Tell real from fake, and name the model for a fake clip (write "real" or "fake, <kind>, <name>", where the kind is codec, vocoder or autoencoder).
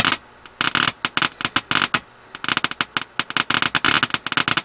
real